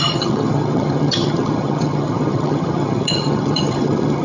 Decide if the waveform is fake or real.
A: fake